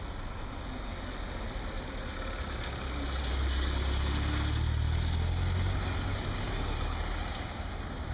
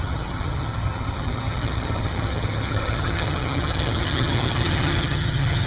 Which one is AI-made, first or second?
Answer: second